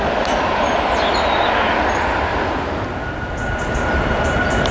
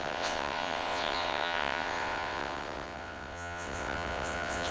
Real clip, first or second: first